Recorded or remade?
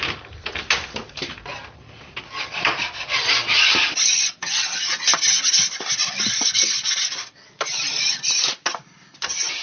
recorded